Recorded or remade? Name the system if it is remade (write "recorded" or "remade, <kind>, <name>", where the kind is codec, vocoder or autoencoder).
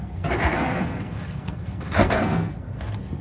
remade, codec, SNAC